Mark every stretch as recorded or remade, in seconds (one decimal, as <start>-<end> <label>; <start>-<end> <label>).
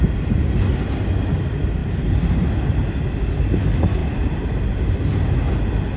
0.0-6.0 recorded